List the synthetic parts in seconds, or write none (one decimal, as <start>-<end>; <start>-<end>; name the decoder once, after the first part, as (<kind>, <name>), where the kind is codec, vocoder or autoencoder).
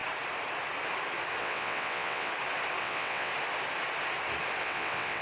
1.4-2.3 (vocoder, WaveNeXt); 2.8-3.3; 4.6-5.2